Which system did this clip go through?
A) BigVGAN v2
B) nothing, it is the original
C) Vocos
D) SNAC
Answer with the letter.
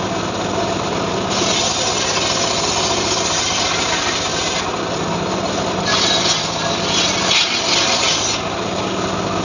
B